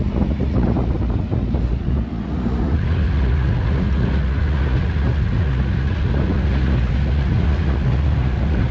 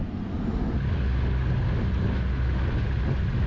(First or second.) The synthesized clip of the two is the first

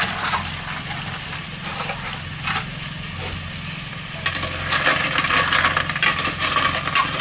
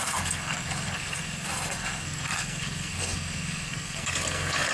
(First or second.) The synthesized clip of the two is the second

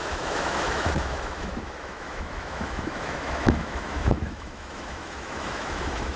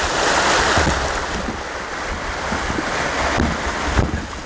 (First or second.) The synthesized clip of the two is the first